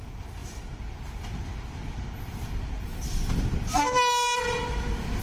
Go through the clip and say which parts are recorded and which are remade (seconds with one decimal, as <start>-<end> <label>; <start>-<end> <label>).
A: 0.0-5.2 recorded